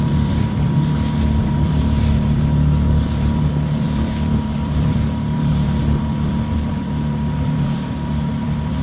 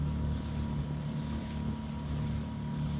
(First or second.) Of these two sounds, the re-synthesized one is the first